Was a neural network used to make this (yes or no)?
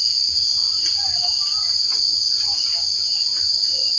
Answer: no